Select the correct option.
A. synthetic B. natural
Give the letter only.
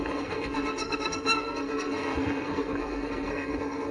A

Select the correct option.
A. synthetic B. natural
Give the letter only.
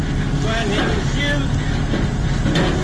B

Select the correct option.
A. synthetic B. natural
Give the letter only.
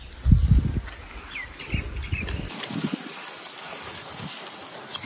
B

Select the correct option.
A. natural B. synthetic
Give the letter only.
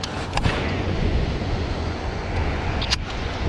B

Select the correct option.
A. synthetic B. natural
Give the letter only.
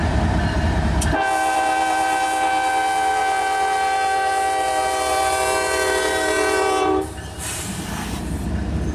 A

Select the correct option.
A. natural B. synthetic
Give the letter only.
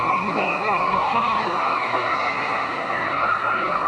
B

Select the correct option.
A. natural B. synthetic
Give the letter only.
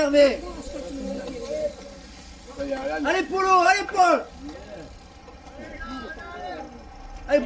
A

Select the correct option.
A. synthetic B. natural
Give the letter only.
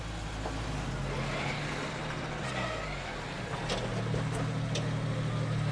B